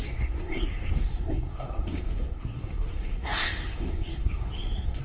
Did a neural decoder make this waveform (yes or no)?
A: yes